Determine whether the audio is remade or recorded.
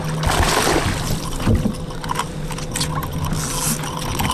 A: recorded